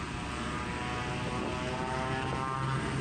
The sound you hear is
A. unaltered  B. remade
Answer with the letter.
A